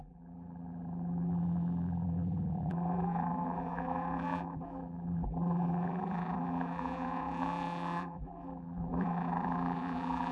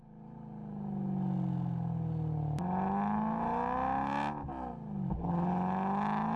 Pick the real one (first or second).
second